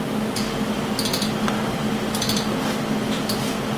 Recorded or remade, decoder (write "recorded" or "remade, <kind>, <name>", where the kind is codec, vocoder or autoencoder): recorded